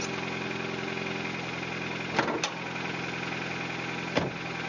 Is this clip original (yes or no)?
yes